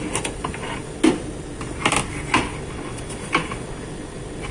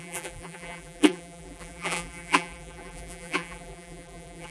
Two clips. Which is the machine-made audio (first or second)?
second